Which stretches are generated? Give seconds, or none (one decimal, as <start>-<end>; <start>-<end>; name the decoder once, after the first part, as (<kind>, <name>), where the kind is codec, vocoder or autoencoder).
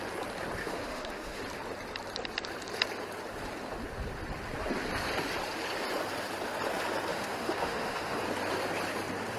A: 0.6-1.4 (autoencoder, DAC-VAE); 7.1-8.2